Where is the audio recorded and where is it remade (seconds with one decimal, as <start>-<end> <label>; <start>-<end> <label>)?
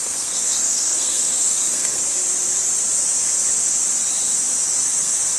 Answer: 0.0-2.0 remade; 2.0-4.8 recorded; 4.8-5.4 remade